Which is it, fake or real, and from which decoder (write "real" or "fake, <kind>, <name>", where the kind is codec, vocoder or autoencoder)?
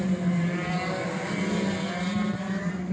real